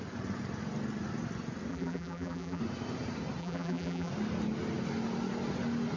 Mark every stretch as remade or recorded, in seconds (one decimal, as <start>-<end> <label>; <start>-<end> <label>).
0.0-1.7 recorded; 1.7-2.6 remade; 2.6-3.4 recorded; 3.4-4.1 remade; 4.1-6.0 recorded